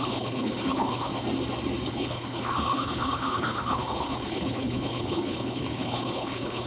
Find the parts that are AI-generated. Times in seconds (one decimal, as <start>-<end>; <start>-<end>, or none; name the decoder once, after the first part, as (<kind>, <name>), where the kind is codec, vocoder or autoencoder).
0.0-1.1 (codec, HILCodec); 1.9-6.7